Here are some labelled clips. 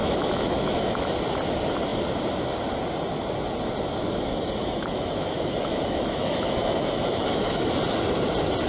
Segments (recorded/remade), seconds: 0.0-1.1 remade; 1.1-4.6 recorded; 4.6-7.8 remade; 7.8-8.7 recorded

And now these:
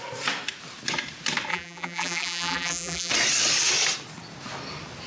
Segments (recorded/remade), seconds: 0.0-1.5 recorded; 1.5-3.1 remade; 3.1-5.1 recorded

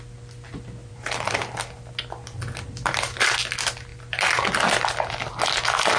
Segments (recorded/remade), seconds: 0.0-6.0 recorded

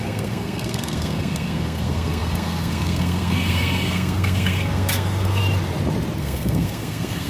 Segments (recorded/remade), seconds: 0.0-5.4 remade; 5.4-6.2 recorded; 6.2-7.3 remade

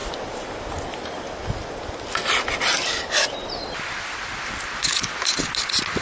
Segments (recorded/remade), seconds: 0.0-6.0 recorded